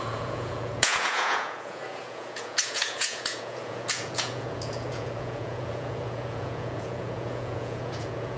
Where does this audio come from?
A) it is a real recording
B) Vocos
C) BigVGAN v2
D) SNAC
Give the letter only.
B